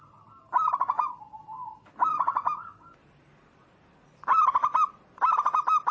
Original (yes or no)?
yes